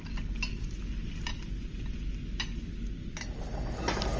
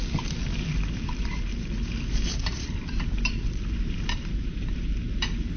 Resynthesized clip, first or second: second